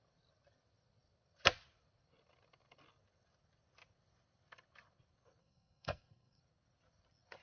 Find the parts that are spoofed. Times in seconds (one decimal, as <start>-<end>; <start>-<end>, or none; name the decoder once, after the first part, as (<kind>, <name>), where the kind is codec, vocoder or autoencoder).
5.4-6.4 (codec, SNAC)